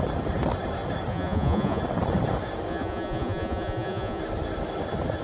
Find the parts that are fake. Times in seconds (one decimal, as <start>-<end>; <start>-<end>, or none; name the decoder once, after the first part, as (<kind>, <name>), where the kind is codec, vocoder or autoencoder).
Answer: 1.1-1.8 (vocoder, Vocos); 2.7-4.2